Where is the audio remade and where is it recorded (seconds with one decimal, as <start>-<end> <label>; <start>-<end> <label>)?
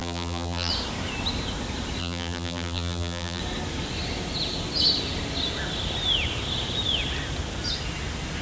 0.0-0.7 remade; 0.7-2.0 recorded; 2.0-3.4 remade; 3.4-8.4 recorded